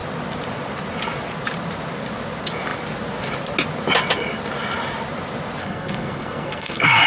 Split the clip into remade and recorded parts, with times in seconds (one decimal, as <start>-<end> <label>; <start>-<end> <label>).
0.0-5.6 recorded; 5.6-7.1 remade